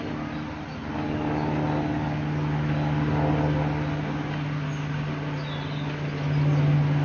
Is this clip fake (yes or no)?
no